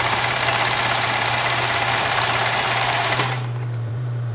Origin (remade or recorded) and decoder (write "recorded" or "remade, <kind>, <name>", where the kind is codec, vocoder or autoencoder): remade, vocoder, BigVGAN v2